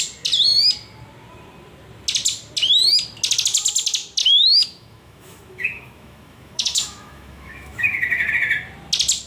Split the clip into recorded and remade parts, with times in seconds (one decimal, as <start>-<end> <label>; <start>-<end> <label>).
0.0-4.2 recorded; 4.2-8.3 remade; 8.3-9.3 recorded